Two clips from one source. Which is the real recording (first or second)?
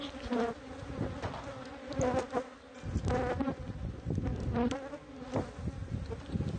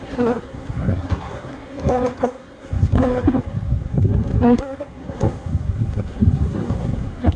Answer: first